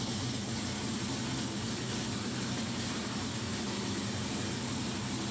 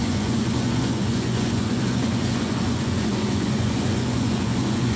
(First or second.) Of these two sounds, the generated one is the second